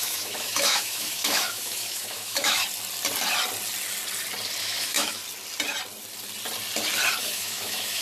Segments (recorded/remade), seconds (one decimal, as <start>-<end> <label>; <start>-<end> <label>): 0.0-2.6 remade; 2.6-4.6 recorded; 4.6-5.2 remade; 5.2-7.2 recorded; 7.2-8.0 remade